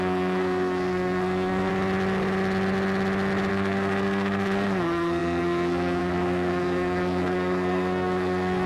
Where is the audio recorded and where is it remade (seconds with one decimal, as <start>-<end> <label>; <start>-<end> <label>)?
0.0-1.7 remade; 1.7-3.5 recorded; 3.5-8.7 remade